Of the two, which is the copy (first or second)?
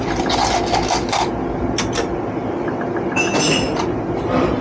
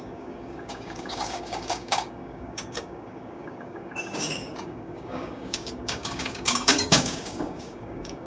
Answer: second